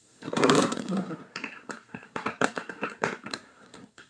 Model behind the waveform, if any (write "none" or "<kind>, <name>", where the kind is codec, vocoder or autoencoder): codec, SNAC